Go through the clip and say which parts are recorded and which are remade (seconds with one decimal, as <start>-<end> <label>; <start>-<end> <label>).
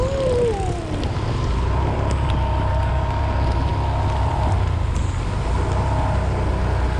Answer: 0.0-2.7 recorded; 2.7-3.2 remade; 3.2-7.0 recorded